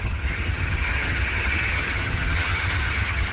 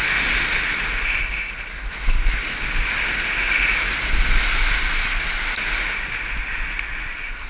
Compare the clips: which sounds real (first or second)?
second